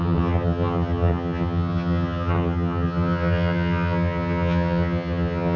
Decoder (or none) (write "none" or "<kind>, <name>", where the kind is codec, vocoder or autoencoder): vocoder, HiFi-GAN